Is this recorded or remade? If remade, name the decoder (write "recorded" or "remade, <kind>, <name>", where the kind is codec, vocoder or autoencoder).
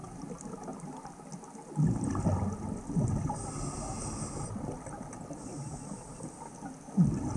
recorded